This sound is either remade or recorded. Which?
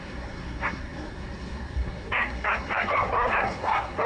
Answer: remade